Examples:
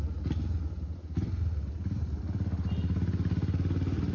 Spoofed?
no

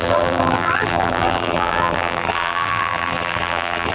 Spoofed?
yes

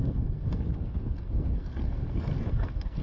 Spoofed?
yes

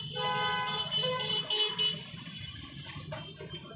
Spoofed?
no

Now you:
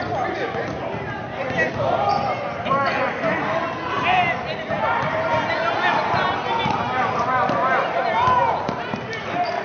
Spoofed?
no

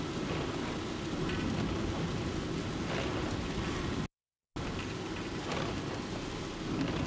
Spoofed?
no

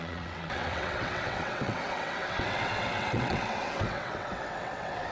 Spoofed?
yes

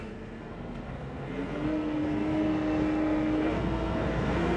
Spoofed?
yes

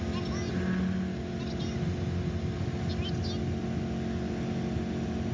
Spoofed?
no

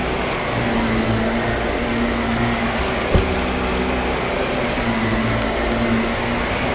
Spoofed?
no